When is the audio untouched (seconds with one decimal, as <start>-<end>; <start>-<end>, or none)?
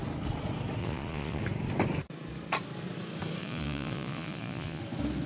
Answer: 0.0-0.8; 1.4-3.4; 4.8-5.3